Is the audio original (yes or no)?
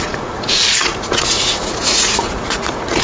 no